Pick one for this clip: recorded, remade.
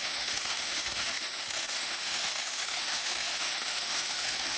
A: remade